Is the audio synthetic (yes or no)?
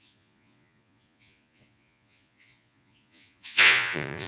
yes